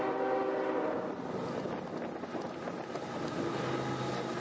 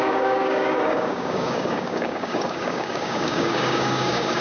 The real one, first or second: first